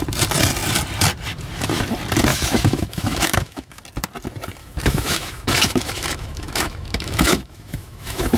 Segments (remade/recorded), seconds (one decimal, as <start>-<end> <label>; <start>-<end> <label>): 0.0-2.3 recorded; 2.3-3.8 remade; 3.8-4.6 recorded; 4.6-8.4 remade